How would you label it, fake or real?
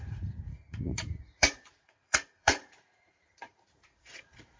fake